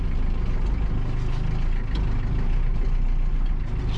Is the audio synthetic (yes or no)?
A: no